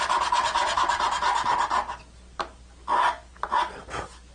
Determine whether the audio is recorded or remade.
recorded